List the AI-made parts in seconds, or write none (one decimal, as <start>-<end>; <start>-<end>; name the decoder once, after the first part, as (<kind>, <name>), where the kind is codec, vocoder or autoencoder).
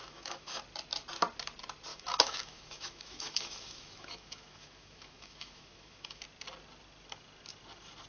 0.0-0.6 (autoencoder, DAC-VAE); 1.9-6.2